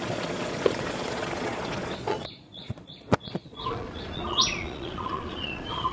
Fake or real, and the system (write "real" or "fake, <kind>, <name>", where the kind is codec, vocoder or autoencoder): fake, vocoder, Vocos